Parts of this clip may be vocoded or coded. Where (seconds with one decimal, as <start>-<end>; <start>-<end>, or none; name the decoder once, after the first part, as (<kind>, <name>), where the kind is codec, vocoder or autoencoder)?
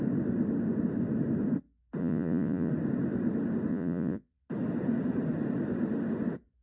2.0-2.7 (vocoder, Vocos); 3.7-4.5